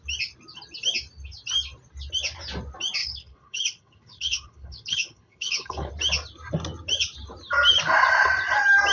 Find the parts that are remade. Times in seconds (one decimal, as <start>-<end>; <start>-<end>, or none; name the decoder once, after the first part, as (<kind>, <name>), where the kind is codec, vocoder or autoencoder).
3.0-5.9 (codec, HILCodec)

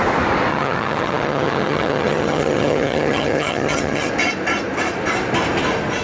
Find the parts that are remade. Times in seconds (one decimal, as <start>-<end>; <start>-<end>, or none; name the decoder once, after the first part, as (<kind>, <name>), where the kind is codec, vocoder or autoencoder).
0.5-4.1 (vocoder, HiFi-GAN)

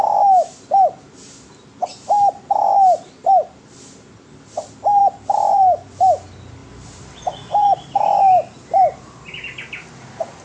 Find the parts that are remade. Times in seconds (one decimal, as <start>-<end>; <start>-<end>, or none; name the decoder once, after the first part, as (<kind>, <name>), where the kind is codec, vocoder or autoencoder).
5.0-6.0 (vocoder, BigVGAN v2); 6.6-9.2

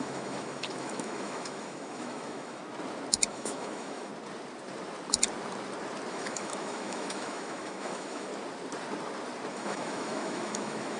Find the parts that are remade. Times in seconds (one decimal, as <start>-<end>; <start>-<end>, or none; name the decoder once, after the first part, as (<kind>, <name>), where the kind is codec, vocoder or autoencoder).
0.0-2.6 (autoencoder, DAC-VAE); 3.3-4.1; 6.1-8.3; 9.5-11.0

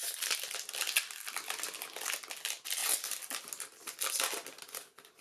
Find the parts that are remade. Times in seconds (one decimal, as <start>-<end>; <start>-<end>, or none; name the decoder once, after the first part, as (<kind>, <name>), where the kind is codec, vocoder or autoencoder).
none

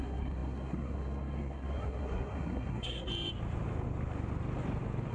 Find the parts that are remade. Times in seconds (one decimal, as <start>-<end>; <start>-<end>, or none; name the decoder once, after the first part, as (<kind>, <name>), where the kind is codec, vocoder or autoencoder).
0.0-3.1 (codec, SNAC)

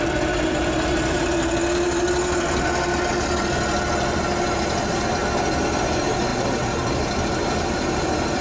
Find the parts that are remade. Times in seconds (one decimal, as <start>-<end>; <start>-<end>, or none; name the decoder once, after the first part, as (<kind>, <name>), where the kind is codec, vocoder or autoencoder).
0.0-1.6 (vocoder, BigVGAN v2); 4.2-5.2; 5.8-8.4